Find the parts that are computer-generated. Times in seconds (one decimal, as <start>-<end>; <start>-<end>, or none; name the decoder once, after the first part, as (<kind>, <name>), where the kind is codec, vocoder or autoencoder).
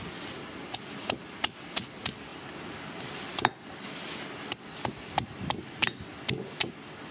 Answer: none